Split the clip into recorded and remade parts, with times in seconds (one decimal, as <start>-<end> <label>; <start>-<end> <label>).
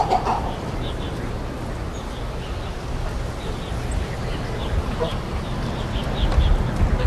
0.0-7.1 recorded